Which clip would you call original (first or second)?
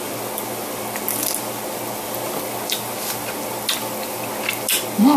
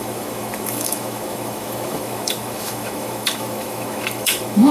first